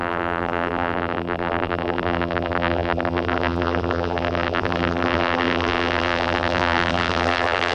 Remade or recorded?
remade